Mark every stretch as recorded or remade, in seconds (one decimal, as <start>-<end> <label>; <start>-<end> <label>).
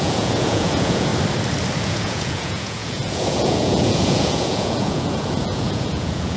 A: 0.0-1.1 remade; 1.1-1.8 recorded; 1.8-6.4 remade